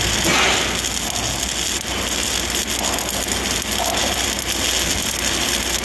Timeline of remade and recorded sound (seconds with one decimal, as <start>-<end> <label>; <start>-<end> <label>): 0.0-5.8 recorded